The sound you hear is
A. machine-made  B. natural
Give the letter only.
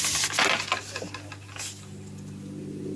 B